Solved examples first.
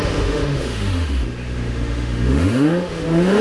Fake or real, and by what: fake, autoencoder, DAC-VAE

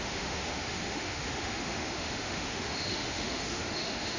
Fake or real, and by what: fake, autoencoder, DAC-VAE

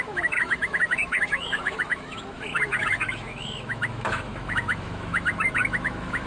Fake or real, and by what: fake, autoencoder, DAC-VAE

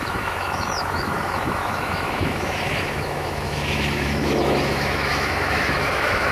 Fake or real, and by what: fake, autoencoder, DAC-VAE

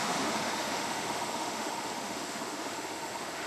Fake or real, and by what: fake, autoencoder, DAC-VAE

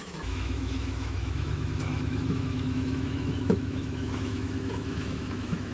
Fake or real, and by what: fake, autoencoder, DAC-VAE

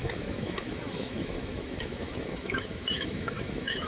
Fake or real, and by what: fake, autoencoder, DAC-VAE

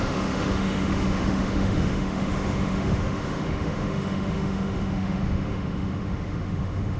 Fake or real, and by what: fake, autoencoder, DAC-VAE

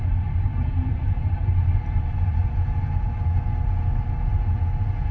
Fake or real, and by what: real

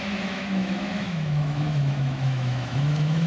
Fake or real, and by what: fake, autoencoder, DAC-VAE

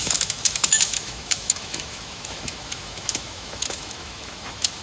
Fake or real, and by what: fake, autoencoder, DAC-VAE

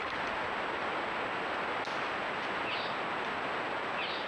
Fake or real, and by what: real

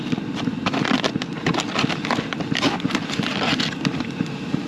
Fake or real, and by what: real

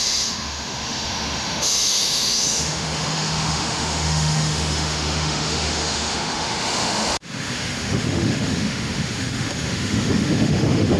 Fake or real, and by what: fake, autoencoder, DAC-VAE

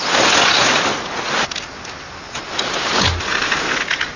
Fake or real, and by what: real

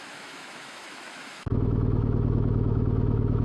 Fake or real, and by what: fake, autoencoder, DAC-VAE